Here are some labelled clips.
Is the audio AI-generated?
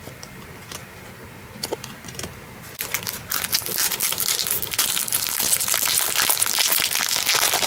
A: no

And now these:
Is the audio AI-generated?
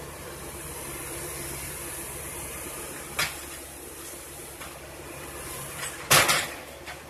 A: yes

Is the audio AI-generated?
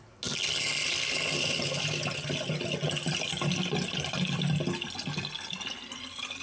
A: no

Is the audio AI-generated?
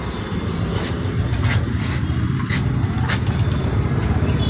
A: no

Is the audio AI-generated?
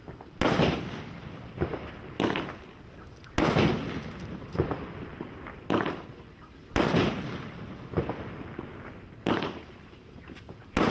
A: no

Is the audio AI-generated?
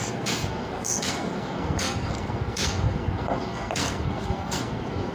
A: yes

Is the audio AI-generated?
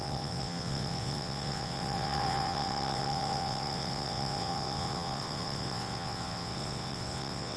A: yes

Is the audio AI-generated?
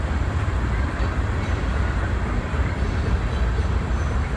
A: no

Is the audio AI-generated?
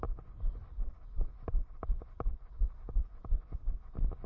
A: no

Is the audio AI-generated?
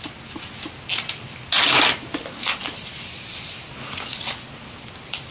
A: no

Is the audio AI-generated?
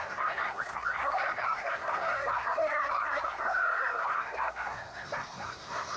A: yes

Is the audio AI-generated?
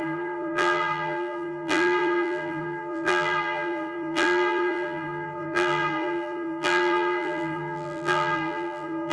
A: yes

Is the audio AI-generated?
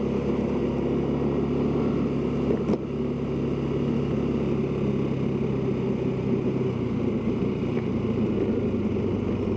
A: no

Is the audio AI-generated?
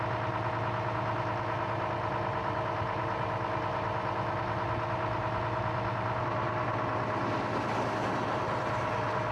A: no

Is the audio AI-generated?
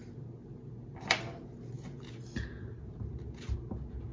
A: no